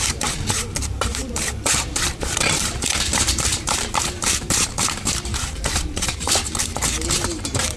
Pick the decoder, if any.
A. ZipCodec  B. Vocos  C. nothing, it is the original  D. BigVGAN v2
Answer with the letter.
D